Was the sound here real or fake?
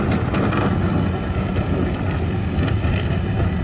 real